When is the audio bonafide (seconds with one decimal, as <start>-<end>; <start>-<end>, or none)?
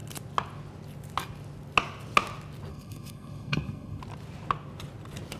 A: 0.0-2.7; 4.0-5.4